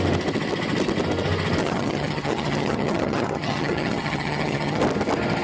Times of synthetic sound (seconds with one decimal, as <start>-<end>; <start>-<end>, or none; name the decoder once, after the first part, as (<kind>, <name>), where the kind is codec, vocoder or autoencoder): 1.6-4.8 (vocoder, HiFi-GAN)